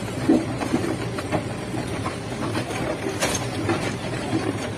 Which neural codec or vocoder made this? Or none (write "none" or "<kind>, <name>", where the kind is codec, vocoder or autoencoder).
vocoder, BigVGAN v2